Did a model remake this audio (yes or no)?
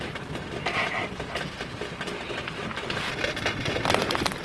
yes